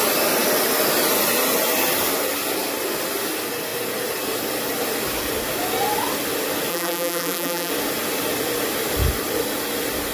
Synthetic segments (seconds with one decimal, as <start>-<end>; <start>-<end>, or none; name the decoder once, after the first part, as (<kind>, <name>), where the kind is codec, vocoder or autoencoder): 6.7-7.7 (vocoder, BigVGAN v2)